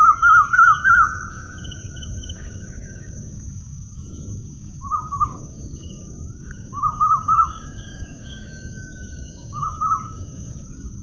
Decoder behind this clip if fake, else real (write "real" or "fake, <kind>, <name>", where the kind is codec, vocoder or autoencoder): fake, codec, DAC